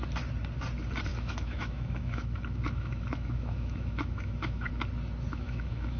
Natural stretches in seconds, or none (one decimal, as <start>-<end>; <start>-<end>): 0.0-1.1; 4.7-5.3